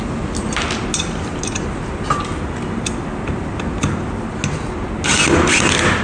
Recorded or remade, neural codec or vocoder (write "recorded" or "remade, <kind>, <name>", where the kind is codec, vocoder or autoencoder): recorded